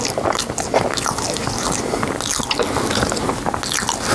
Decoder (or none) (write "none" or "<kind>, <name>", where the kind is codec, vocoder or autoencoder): none